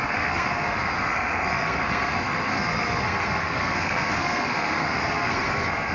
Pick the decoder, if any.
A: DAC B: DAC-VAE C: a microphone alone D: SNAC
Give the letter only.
D